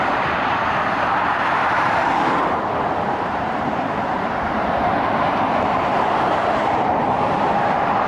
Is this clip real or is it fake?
fake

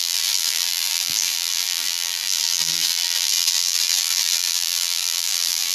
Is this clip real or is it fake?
fake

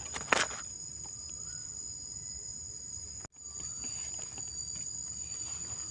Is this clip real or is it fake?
real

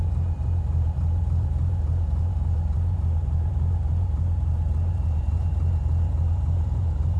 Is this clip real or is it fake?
fake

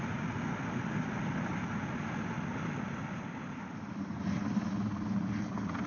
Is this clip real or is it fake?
real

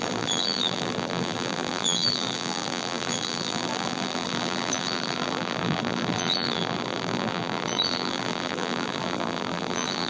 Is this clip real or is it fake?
fake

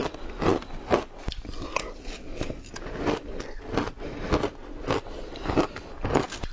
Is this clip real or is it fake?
real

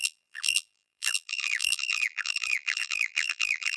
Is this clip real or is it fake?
fake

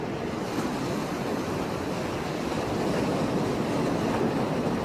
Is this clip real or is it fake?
real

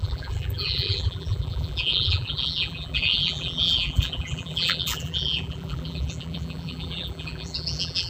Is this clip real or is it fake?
fake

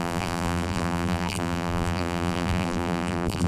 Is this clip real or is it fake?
fake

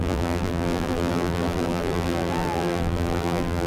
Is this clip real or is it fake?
fake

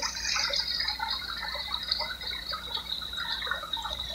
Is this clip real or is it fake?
fake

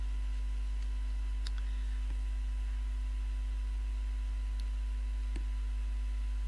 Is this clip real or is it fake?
real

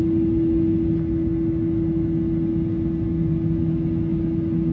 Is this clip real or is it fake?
real